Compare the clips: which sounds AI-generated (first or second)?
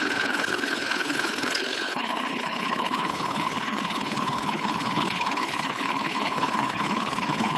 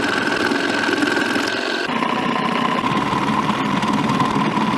first